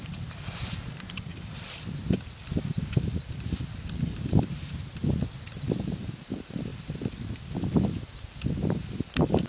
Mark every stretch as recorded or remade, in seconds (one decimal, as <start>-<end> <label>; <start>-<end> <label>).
0.0-1.3 remade; 1.3-3.3 recorded; 3.3-5.0 remade; 5.0-6.0 recorded; 6.0-6.7 remade; 6.7-8.5 recorded; 8.5-9.5 remade